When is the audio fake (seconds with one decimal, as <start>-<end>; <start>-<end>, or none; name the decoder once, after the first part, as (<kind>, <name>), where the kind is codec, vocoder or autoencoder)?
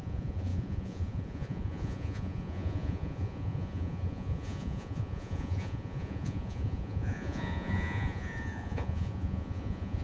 0.0-10.0 (vocoder, Vocos)